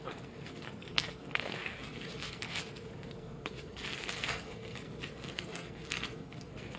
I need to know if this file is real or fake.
fake